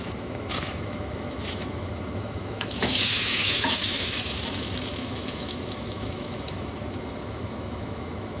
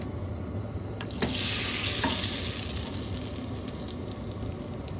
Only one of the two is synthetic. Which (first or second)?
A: first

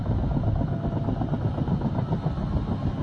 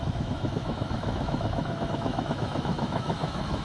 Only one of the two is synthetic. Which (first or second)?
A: second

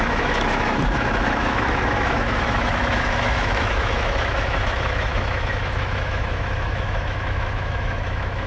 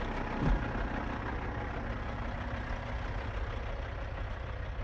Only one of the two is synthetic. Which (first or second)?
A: first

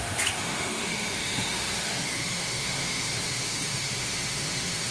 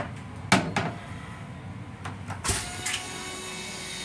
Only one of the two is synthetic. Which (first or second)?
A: first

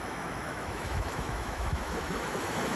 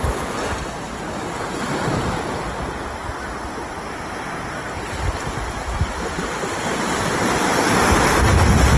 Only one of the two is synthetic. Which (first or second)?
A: first